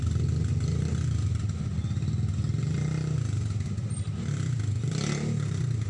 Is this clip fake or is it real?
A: real